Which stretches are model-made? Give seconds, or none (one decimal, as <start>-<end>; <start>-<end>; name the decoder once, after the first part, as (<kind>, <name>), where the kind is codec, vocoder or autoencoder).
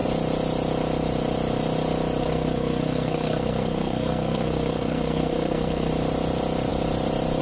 2.2-5.9 (codec, SNAC)